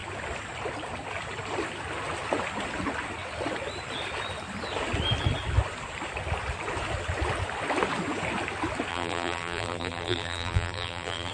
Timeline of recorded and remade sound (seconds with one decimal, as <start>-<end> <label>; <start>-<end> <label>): 0.0-8.9 recorded; 8.9-11.3 remade